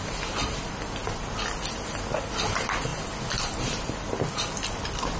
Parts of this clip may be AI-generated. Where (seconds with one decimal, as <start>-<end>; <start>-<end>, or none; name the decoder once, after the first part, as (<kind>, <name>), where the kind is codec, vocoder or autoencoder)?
none